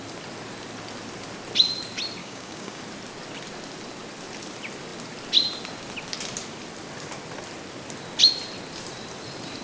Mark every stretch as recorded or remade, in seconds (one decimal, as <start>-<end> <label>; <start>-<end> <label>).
0.0-2.2 recorded; 2.2-2.8 remade; 2.8-9.6 recorded